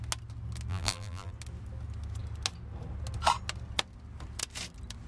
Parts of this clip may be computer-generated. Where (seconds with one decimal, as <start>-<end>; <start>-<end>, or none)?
0.7-1.3